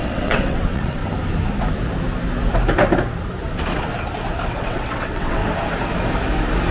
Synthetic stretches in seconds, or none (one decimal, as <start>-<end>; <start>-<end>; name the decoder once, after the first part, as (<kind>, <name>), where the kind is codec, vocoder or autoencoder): 0.0-1.0 (vocoder, WaveNeXt); 4.5-5.4